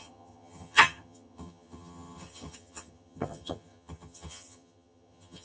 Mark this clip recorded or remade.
remade